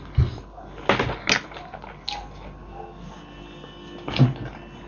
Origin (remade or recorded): recorded